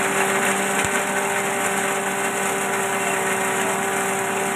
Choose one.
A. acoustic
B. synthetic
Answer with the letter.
A